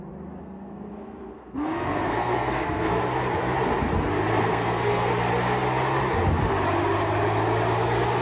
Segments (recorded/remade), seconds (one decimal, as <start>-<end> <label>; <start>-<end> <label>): 0.0-0.4 recorded; 0.4-3.0 remade; 3.0-4.3 recorded; 4.3-5.1 remade; 5.1-8.2 recorded